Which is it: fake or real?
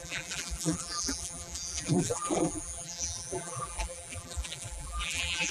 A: fake